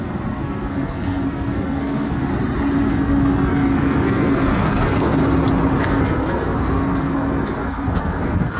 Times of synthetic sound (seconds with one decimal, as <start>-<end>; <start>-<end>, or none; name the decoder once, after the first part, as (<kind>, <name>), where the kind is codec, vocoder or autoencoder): 0.0-2.3 (codec, SNAC); 2.8-5.2; 5.8-8.6